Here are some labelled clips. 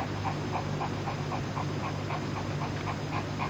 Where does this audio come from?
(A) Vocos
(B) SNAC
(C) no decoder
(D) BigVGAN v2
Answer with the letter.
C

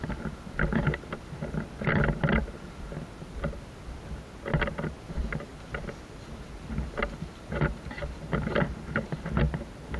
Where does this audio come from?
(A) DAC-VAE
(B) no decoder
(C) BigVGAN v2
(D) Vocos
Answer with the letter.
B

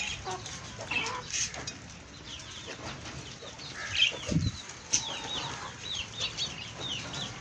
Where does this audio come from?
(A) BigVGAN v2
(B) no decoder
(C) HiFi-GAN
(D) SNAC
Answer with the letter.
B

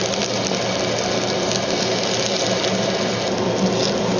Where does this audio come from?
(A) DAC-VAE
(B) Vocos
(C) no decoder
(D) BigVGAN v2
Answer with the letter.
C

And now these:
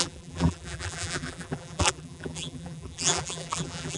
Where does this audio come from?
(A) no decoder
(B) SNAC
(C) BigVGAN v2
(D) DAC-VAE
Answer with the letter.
C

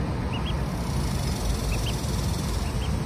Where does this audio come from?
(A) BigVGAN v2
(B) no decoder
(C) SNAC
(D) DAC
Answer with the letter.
B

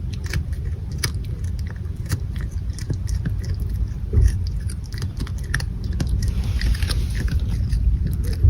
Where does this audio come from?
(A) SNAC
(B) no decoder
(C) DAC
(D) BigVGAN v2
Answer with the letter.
B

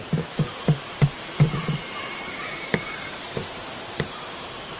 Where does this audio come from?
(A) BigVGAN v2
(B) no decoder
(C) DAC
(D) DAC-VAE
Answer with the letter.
A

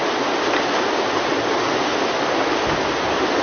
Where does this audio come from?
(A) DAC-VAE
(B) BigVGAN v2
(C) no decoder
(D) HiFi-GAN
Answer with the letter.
C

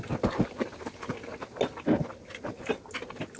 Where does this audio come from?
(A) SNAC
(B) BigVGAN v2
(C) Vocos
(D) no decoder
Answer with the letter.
D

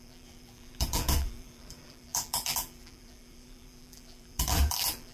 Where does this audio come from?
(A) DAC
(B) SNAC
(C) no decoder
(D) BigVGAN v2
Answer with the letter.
D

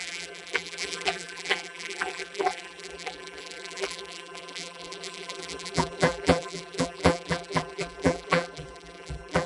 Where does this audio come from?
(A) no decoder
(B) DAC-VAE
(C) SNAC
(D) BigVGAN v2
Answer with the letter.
D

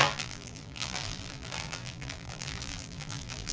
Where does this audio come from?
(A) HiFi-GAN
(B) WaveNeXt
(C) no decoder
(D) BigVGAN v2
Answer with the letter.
D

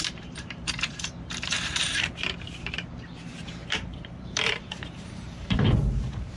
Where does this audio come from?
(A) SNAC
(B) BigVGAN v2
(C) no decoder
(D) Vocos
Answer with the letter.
B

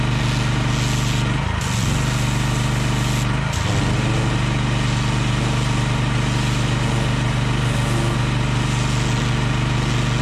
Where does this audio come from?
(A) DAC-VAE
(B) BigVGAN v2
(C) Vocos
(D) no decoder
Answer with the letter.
D